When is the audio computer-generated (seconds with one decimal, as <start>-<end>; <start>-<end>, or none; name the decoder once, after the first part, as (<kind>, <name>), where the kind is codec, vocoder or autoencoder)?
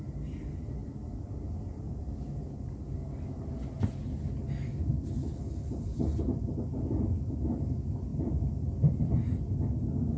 0.8-2.0 (vocoder, BigVGAN v2); 8.1-9.0